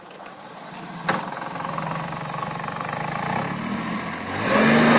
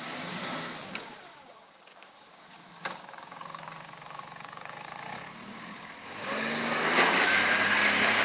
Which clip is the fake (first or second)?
second